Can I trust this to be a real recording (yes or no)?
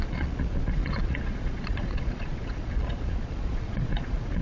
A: no